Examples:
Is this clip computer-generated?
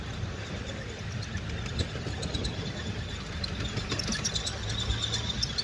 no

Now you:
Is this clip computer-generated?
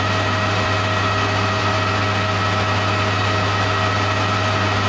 no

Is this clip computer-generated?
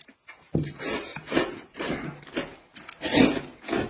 no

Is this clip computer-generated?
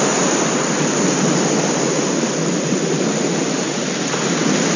no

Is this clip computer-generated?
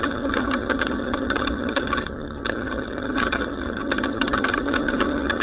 yes